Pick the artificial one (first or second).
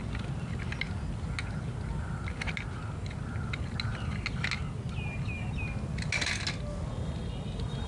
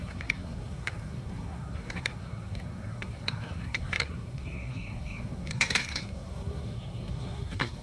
second